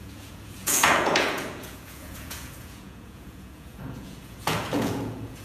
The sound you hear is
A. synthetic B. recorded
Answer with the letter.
A